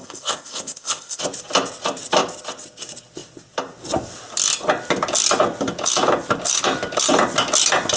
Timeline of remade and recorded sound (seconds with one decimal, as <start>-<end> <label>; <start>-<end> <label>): 0.0-1.2 remade; 1.2-8.0 recorded